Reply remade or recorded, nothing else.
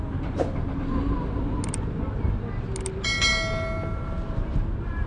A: recorded